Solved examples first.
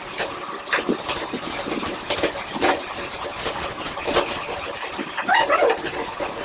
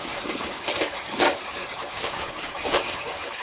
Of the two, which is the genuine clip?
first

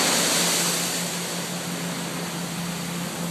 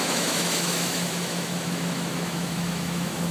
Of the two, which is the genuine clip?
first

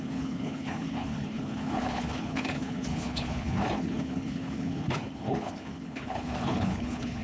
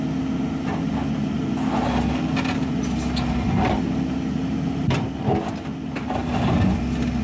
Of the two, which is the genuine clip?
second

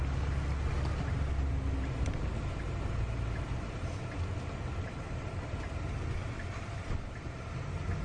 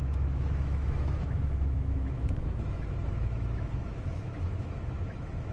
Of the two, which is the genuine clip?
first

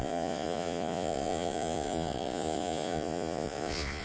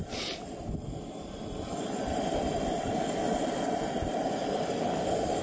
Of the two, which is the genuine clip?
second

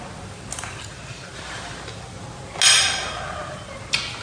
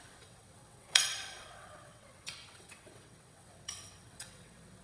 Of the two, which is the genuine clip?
first